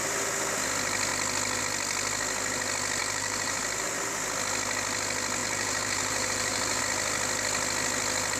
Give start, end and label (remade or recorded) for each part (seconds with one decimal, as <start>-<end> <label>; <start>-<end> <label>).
0.0-3.0 recorded; 3.0-3.6 remade; 3.6-5.4 recorded; 5.4-6.8 remade; 6.8-8.4 recorded

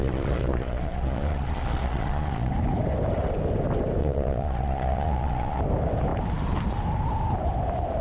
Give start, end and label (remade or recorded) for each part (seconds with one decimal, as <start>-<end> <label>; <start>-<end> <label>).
0.0-2.5 remade; 2.5-4.0 recorded; 4.0-5.6 remade; 5.6-8.0 recorded

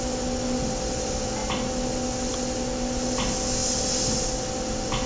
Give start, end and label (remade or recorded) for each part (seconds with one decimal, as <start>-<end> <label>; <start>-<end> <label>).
0.0-5.1 recorded